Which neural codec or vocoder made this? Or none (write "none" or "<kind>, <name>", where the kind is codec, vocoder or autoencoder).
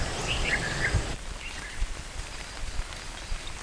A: vocoder, BigVGAN v2